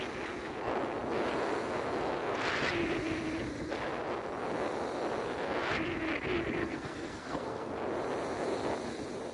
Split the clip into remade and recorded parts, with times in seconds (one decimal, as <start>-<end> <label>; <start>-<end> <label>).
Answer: 0.0-6.6 recorded; 6.6-7.7 remade; 7.7-9.3 recorded